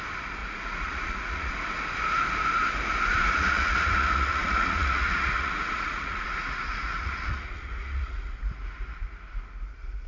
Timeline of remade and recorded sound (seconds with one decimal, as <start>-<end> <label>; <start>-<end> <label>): 0.0-0.4 recorded; 0.4-1.5 remade; 1.5-3.2 recorded; 3.2-8.3 remade; 8.3-10.1 recorded